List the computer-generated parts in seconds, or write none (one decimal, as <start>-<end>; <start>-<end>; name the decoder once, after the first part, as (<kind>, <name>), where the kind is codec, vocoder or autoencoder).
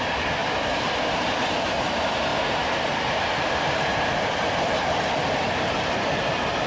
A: 0.0-0.4 (vocoder, BigVGAN v2); 1.1-2.3; 4.1-6.7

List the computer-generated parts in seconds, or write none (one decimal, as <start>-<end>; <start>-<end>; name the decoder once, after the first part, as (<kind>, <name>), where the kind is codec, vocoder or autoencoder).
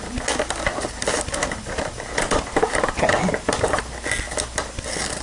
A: 0.7-3.8 (vocoder, BigVGAN v2)